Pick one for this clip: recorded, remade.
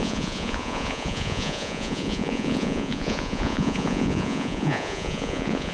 remade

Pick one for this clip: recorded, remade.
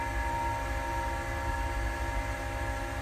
recorded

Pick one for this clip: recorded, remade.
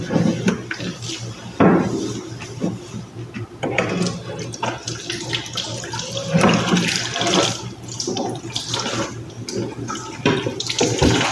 recorded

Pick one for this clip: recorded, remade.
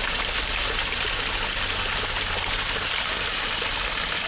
recorded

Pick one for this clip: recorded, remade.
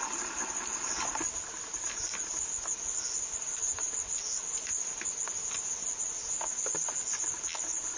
recorded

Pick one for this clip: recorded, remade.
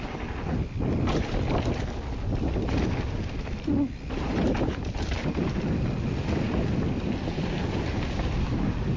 recorded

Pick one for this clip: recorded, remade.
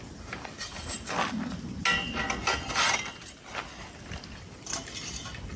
recorded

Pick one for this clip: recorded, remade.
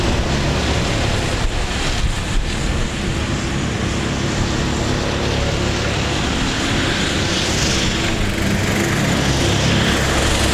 recorded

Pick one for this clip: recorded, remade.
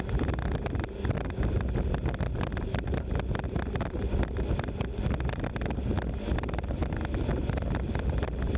recorded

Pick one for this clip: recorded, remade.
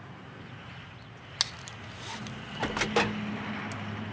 recorded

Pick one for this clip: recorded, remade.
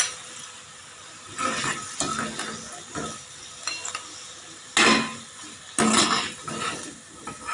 recorded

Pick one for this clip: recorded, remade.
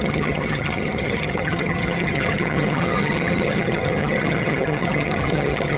remade